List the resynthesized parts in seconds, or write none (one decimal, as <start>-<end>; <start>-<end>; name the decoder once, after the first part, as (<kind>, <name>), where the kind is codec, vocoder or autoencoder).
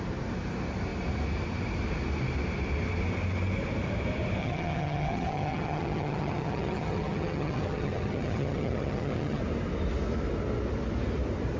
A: 4.4-9.4 (vocoder, HiFi-GAN)